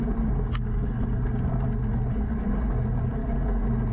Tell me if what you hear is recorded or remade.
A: recorded